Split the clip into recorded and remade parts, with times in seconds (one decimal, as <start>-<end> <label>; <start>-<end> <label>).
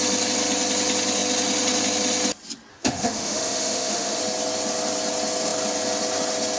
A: 0.0-2.7 recorded; 2.7-4.2 remade; 4.2-6.6 recorded